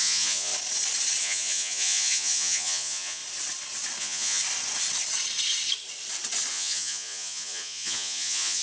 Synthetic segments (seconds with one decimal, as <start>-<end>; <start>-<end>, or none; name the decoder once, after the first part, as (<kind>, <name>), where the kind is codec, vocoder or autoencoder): 0.0-0.5 (vocoder, Vocos); 1.2-3.2; 4.0-4.4; 6.5-8.6